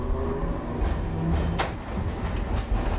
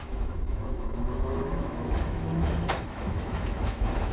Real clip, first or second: first